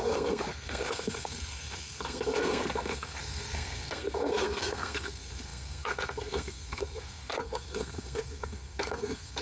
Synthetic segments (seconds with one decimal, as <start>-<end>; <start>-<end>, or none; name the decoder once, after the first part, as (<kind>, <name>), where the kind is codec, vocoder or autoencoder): 0.0-9.4 (codec, SNAC)